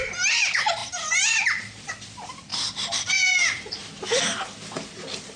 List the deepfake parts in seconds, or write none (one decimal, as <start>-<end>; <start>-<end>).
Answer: 0.0-2.5; 3.1-3.8